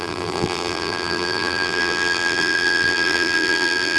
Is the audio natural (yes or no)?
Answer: no